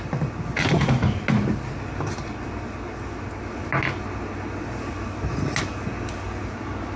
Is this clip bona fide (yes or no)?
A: yes